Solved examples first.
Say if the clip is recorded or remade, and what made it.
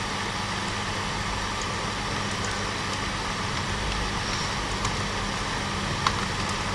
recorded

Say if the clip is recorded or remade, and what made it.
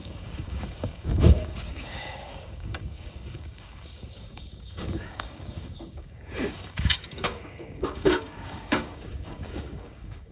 remade, codec, DAC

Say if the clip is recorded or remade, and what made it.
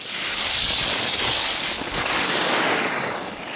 remade, codec, DAC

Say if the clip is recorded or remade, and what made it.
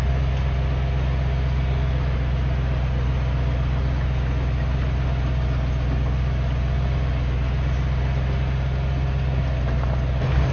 recorded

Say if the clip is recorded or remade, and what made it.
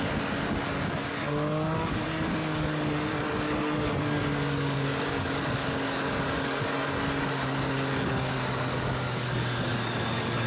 remade, codec, DAC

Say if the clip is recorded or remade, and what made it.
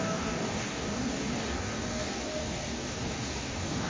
remade, codec, DAC